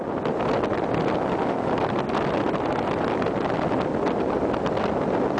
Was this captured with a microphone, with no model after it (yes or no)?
yes